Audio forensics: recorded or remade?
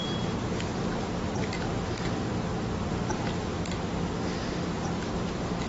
recorded